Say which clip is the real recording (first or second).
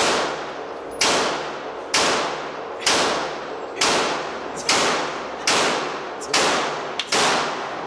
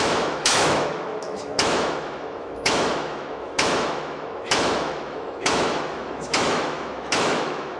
first